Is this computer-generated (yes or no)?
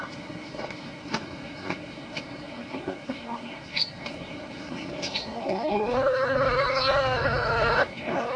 yes